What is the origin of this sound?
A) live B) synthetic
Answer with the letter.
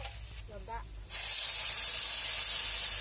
A